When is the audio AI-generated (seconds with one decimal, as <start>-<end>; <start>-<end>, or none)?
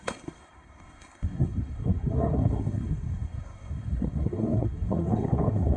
0.0-5.8